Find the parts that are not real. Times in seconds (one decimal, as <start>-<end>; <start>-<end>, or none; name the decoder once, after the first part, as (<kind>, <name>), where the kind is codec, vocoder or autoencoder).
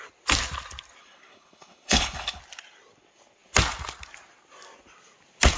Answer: 1.0-2.4 (codec, HILCodec)